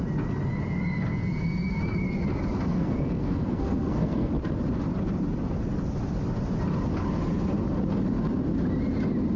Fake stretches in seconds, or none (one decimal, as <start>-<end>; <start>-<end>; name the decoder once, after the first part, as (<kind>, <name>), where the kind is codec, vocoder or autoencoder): 2.7-4.3 (codec, SNAC)